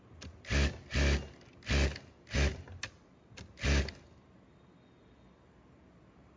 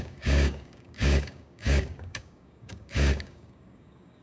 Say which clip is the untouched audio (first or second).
first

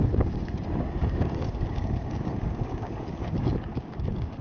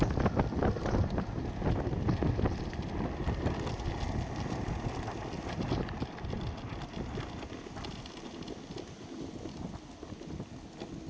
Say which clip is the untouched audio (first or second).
second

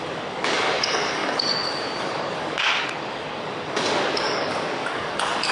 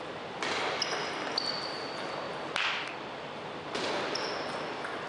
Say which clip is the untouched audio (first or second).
second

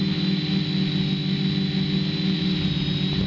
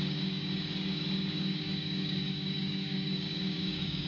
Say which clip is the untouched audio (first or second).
first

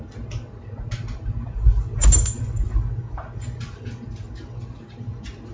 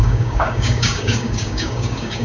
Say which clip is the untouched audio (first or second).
first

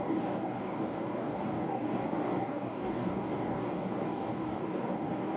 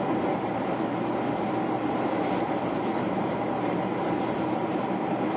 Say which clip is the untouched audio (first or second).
second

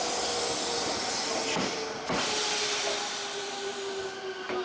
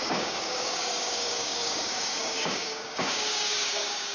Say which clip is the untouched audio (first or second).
first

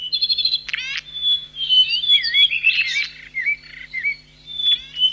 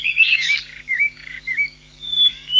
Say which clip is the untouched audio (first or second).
first